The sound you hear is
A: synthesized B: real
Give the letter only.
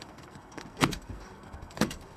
A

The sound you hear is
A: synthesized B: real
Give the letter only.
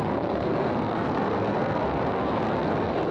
A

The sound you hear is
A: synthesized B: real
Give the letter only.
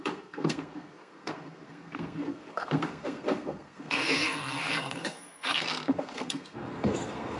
A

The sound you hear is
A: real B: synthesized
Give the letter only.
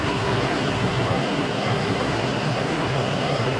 B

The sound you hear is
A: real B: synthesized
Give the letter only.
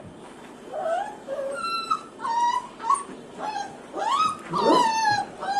A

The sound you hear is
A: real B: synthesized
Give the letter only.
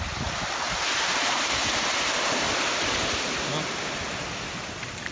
A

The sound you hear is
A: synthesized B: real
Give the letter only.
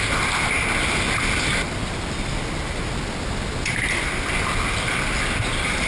B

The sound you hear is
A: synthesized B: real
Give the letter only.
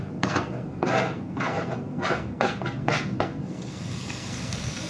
A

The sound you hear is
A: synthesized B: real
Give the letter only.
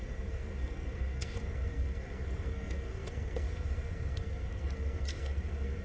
A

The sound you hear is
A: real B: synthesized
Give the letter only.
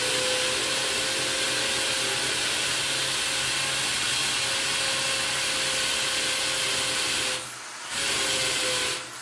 A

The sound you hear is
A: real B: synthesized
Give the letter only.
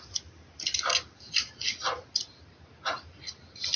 A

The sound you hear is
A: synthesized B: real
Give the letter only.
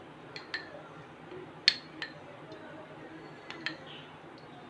B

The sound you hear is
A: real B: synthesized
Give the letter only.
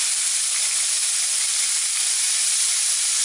A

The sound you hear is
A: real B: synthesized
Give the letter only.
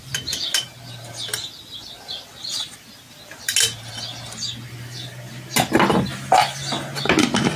A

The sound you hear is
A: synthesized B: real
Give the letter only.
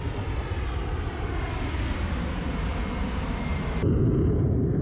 B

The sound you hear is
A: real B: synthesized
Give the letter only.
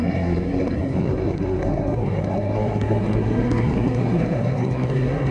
B